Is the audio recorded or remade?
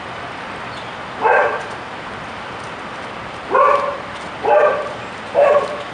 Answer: remade